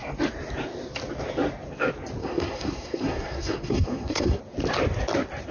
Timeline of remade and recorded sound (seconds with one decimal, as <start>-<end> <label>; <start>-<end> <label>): 0.0-2.2 recorded; 2.2-4.4 remade; 4.4-5.5 recorded